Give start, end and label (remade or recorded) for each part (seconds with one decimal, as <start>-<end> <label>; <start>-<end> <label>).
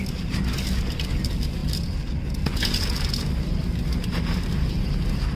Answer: 0.0-5.3 recorded